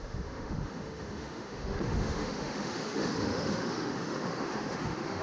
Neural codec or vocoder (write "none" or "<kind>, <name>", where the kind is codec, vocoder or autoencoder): autoencoder, DAC-VAE